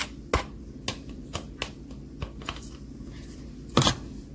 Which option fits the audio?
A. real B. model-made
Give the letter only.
A